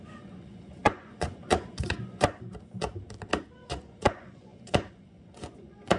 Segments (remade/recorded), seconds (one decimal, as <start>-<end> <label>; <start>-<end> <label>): 0.0-2.5 remade; 2.5-3.4 recorded; 3.4-6.0 remade